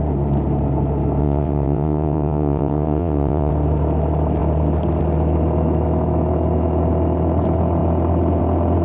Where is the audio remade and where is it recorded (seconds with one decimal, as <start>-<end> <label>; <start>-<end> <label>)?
0.0-1.2 recorded; 1.2-3.5 remade; 3.5-8.8 recorded